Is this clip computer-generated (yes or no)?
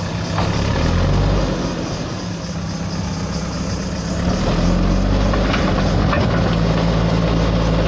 no